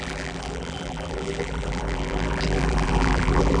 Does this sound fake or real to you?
fake